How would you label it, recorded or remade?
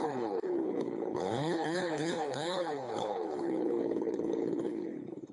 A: remade